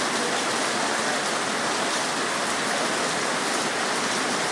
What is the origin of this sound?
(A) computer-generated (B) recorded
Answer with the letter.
B